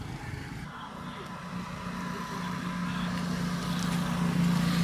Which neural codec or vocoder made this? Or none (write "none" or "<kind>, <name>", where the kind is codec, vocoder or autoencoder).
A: none